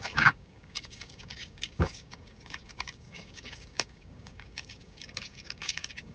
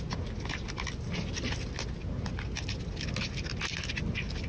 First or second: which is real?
second